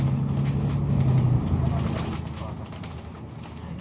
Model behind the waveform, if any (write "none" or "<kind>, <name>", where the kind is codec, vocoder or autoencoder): none